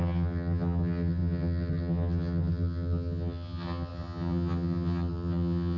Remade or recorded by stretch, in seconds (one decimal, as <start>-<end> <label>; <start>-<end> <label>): 0.0-5.8 remade